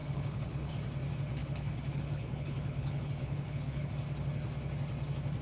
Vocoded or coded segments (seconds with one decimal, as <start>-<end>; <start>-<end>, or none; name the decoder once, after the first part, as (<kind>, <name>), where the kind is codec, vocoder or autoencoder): 0.0-0.7 (codec, HILCodec); 1.4-3.9